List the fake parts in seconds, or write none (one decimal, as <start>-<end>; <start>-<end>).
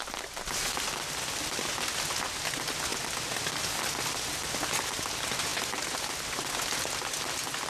none